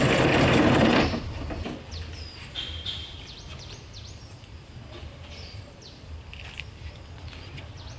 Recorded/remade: remade